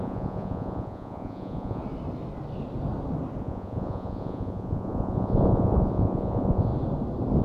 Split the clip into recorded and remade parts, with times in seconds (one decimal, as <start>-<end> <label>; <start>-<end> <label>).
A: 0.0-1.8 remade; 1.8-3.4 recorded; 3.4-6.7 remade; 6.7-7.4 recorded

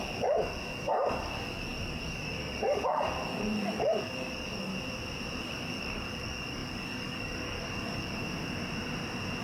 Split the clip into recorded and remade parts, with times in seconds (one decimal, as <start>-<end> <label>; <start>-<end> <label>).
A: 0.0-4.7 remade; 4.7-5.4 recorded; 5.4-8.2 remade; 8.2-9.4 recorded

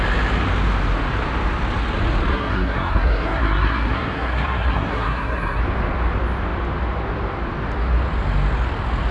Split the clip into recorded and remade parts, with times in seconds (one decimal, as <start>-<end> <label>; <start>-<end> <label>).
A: 0.0-2.3 recorded; 2.3-5.6 remade; 5.6-9.1 recorded